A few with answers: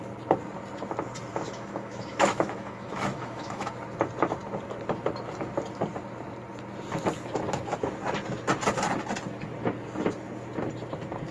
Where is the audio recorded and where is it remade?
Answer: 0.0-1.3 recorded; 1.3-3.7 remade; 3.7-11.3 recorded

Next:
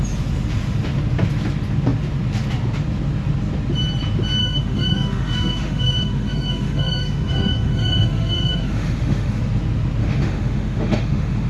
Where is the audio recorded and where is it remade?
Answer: 0.0-4.4 recorded; 4.4-9.4 remade; 9.4-10.0 recorded; 10.0-11.5 remade